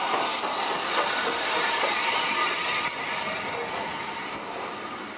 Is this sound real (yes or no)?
yes